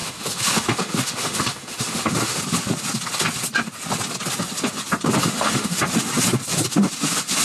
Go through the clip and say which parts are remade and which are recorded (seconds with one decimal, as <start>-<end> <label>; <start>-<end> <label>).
0.0-2.4 remade; 2.4-5.2 recorded; 5.2-5.8 remade; 5.8-7.4 recorded